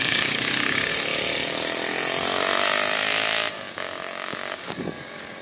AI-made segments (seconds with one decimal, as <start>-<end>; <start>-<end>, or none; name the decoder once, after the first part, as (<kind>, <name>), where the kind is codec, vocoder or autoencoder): 0.0-0.9 (codec, DAC); 3.5-5.4